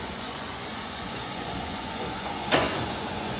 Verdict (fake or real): fake